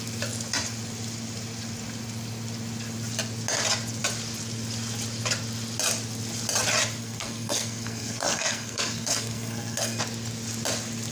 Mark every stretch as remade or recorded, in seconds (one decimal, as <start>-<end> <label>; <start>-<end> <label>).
0.0-7.0 recorded; 7.0-10.0 remade; 10.0-11.1 recorded